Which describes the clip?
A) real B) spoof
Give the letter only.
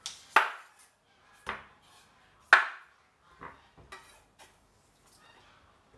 A